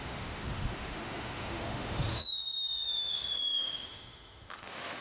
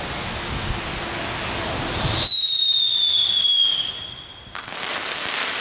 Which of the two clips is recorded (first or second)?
second